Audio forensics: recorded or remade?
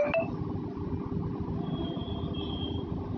recorded